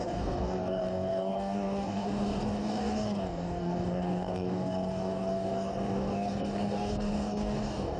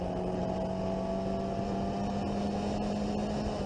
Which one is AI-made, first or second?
first